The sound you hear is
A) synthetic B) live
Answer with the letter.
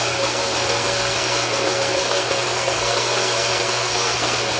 A